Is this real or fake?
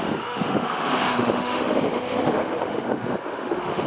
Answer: fake